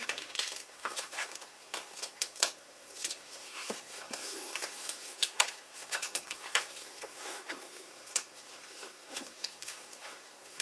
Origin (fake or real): fake